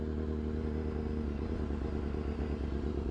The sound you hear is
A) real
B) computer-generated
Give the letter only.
A